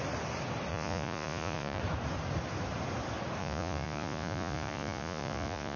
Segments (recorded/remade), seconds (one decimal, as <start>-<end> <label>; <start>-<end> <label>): 0.0-0.7 recorded; 0.7-1.8 remade; 1.8-3.4 recorded; 3.4-5.8 remade